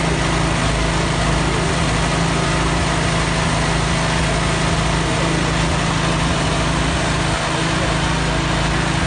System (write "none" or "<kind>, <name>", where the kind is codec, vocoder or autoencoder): none